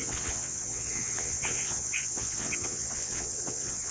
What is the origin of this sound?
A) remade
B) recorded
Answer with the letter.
A